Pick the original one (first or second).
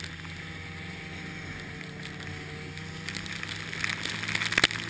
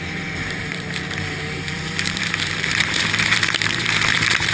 first